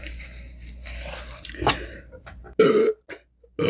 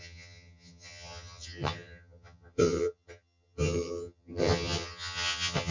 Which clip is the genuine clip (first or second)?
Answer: first